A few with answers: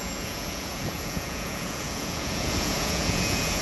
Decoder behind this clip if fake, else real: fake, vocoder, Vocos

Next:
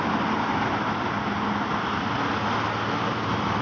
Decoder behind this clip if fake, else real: real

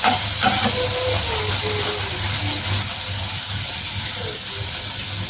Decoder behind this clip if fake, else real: real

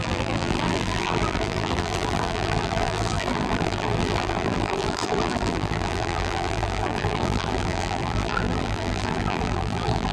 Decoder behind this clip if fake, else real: fake, vocoder, BigVGAN v2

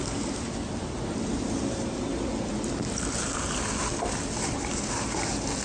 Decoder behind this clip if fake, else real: real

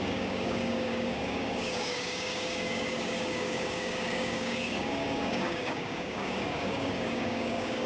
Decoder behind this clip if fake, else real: fake, codec, DAC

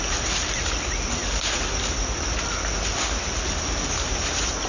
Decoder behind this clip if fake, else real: real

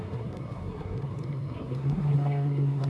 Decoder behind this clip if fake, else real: fake, codec, SNAC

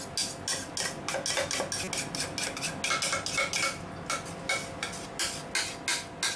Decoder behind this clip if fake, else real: real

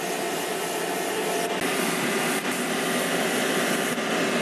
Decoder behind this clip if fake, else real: real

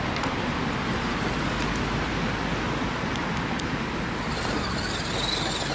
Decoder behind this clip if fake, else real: real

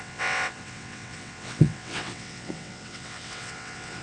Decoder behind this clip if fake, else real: fake, vocoder, WaveNeXt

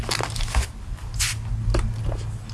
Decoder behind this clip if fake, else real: real